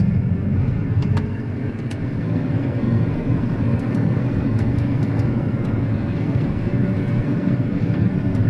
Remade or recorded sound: remade